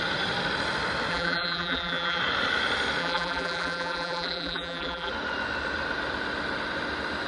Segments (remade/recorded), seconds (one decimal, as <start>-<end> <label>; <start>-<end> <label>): 0.0-1.1 recorded; 1.1-2.2 remade; 2.2-3.0 recorded; 3.0-5.1 remade; 5.1-7.3 recorded